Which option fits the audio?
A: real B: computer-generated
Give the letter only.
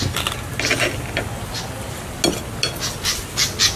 A